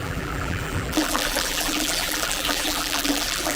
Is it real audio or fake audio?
fake